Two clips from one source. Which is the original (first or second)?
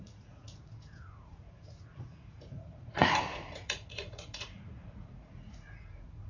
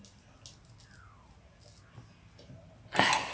second